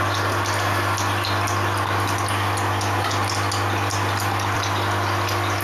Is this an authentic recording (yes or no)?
yes